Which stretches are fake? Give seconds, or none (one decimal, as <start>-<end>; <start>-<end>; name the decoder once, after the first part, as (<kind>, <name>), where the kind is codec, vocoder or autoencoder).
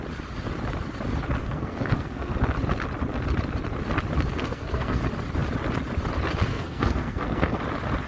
1.4-2.3 (codec, SNAC); 4.3-5.0; 6.5-7.6